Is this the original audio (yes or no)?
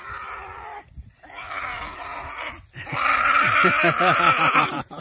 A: no